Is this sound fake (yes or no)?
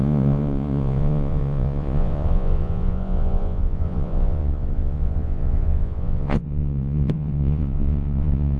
yes